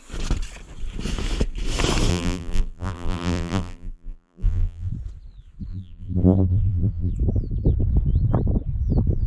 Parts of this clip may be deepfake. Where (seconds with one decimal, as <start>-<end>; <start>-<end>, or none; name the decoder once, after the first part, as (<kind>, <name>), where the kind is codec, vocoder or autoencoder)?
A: 2.1-4.9 (vocoder, BigVGAN v2); 5.7-7.1